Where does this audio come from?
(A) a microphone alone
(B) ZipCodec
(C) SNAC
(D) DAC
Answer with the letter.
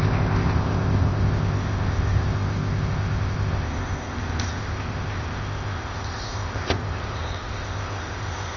B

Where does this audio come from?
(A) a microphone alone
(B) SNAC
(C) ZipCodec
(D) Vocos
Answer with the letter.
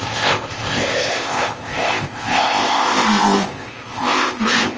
C